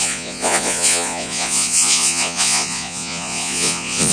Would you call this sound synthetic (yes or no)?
yes